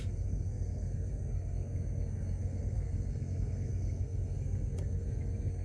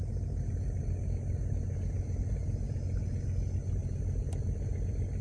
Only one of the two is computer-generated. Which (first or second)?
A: first